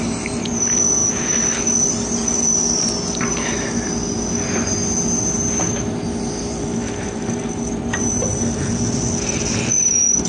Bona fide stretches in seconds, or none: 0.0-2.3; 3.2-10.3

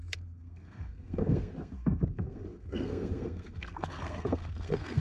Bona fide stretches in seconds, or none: none

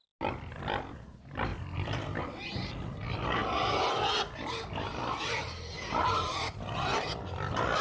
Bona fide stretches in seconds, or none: 0.0-1.5; 2.2-4.9; 6.7-7.8

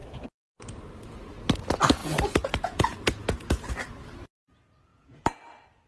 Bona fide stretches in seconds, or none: 0.0-2.0; 3.7-4.9; 5.5-5.9

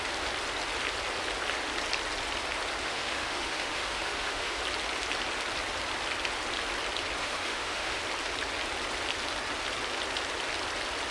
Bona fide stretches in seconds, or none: 0.0-2.8; 4.6-7.2; 8.0-11.1

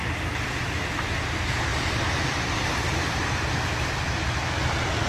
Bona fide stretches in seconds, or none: 0.0-5.1

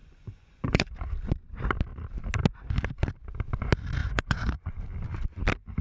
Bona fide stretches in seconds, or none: 0.9-4.0; 4.7-5.8